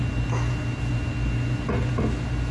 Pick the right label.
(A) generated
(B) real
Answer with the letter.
B